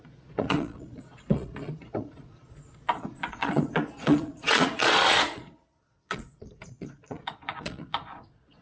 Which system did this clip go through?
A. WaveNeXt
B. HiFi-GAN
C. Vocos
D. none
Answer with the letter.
C